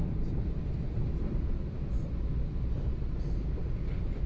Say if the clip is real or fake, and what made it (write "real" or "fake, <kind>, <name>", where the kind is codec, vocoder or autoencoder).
real